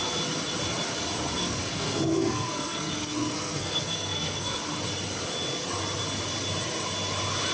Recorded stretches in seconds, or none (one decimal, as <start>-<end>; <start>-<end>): 0.0-1.4; 4.6-7.5